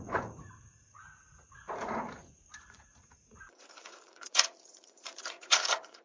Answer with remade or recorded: remade